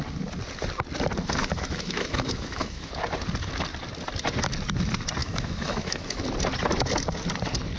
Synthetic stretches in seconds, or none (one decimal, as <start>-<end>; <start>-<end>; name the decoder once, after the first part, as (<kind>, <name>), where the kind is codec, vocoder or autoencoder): 1.4-2.9 (autoencoder, DAC-VAE); 5.2-6.2